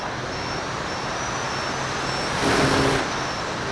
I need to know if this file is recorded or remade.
recorded